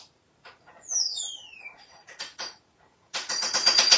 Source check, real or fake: fake